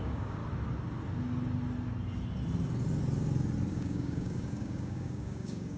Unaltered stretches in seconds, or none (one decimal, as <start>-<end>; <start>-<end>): 0.4-3.7